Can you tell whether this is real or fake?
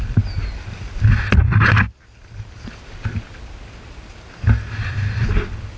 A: real